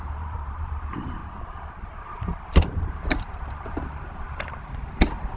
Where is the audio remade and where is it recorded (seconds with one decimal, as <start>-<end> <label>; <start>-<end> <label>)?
0.0-1.2 remade; 1.2-2.9 recorded; 2.9-5.4 remade